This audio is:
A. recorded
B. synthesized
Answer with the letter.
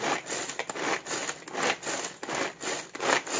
A